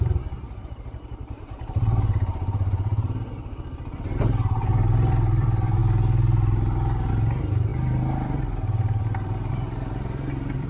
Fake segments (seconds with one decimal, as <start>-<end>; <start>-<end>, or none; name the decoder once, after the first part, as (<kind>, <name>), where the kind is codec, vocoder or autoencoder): 0.0-5.8 (vocoder, BigVGAN v2); 7.1-10.7